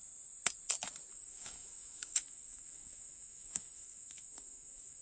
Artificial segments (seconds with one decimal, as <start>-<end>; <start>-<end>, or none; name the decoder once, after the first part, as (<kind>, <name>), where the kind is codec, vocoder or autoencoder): 1.1-5.0 (autoencoder, DAC-VAE)